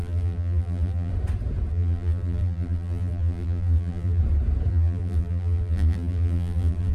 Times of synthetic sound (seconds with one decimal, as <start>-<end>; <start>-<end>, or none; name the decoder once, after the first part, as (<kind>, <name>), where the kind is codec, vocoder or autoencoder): 0.0-1.1 (vocoder, BigVGAN v2); 1.7-4.2; 4.7-6.9